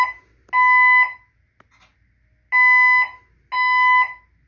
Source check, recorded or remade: recorded